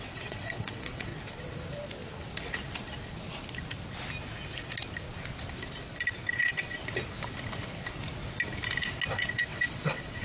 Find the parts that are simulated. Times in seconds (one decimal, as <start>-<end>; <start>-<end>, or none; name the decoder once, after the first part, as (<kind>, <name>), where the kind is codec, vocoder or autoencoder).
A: 0.0-1.1 (vocoder, WaveNeXt); 6.3-6.8; 9.1-10.2